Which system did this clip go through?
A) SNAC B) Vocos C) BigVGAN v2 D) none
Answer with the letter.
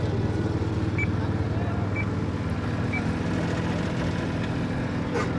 D